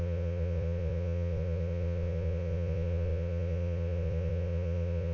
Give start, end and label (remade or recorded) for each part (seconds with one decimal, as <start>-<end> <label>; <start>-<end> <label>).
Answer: 0.0-5.1 remade

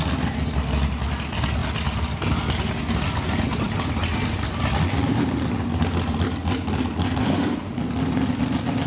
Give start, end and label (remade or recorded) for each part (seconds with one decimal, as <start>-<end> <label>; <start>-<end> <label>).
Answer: 0.0-8.9 recorded

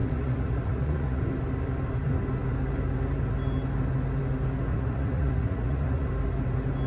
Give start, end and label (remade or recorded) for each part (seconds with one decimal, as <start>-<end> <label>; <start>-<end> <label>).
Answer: 0.0-1.2 remade; 1.2-4.7 recorded; 4.7-6.1 remade; 6.1-6.9 recorded

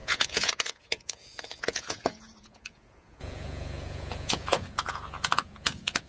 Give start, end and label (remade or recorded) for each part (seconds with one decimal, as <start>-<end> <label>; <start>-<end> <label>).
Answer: 0.0-6.1 remade

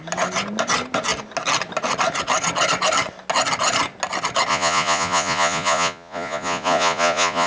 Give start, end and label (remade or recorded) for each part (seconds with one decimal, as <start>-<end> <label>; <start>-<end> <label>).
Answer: 0.0-4.5 recorded; 4.5-7.5 remade

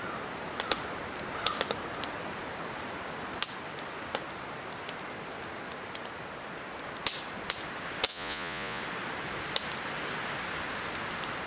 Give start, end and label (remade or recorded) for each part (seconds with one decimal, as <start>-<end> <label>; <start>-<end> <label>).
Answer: 0.0-8.1 recorded; 8.1-8.8 remade; 8.8-11.5 recorded

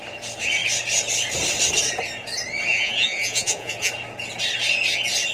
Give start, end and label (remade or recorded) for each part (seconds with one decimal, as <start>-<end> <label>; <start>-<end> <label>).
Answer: 0.0-2.7 recorded; 2.7-3.9 remade; 3.9-5.3 recorded